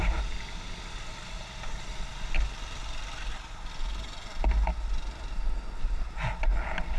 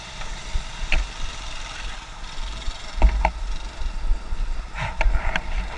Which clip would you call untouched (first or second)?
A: first